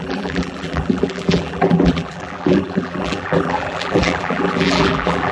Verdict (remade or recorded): remade